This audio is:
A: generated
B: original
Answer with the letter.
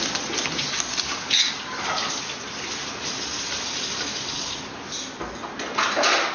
B